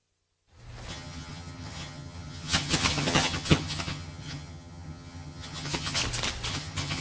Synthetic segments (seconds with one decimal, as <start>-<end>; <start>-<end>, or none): 0.9-6.0; 6.5-7.0